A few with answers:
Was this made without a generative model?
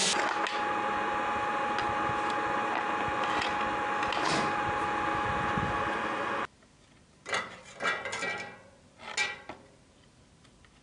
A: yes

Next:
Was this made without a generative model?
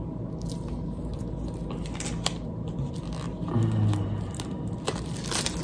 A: yes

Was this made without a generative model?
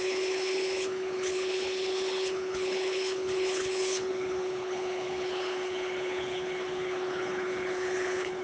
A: no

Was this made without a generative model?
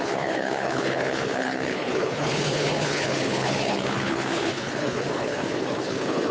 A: no